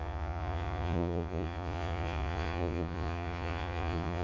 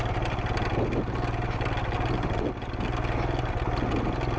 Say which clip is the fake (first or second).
first